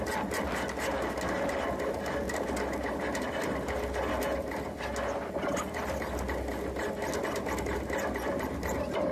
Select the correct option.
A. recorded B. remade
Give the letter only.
A